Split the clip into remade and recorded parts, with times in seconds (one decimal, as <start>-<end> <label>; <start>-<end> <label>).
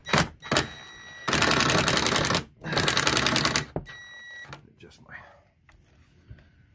0.0-6.7 recorded